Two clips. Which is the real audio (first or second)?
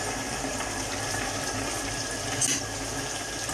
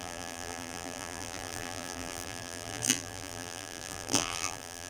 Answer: first